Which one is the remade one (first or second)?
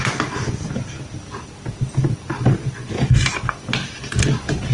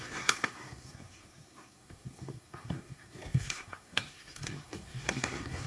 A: second